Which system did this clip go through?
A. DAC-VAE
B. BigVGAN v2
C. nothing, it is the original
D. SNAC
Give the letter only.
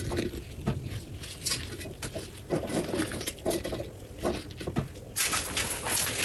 C